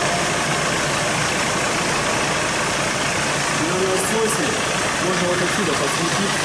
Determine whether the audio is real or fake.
real